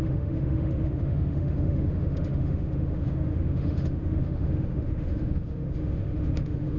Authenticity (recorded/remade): remade